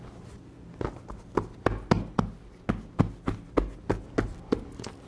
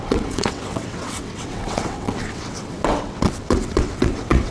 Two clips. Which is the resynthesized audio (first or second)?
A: second